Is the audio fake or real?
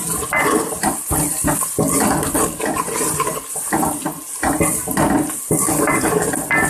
real